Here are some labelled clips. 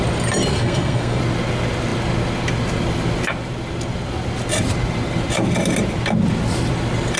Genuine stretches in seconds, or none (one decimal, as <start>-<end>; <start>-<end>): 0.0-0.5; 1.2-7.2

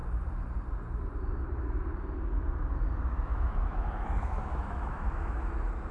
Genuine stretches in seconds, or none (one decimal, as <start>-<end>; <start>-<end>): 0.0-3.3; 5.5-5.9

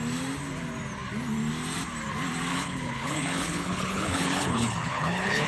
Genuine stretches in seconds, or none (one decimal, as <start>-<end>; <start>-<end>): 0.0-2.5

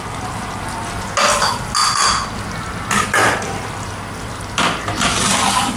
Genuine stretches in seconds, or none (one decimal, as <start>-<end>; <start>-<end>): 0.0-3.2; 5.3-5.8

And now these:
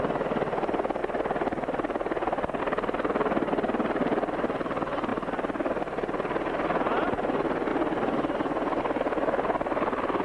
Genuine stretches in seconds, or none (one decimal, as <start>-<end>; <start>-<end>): 0.0-10.2